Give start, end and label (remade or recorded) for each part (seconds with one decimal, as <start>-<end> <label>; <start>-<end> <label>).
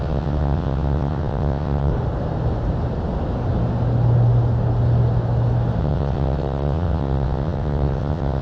0.0-1.9 remade; 1.9-5.8 recorded; 5.8-8.4 remade